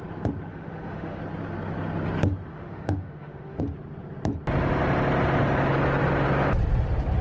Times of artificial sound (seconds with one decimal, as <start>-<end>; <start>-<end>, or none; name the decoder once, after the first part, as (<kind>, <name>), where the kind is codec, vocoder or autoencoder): 0.5-1.2 (autoencoder, DAC-VAE); 2.5-3.6